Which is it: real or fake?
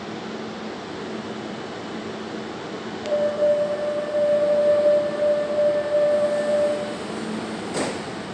real